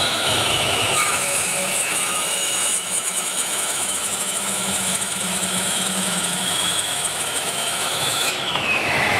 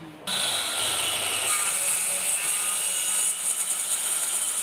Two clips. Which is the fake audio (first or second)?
first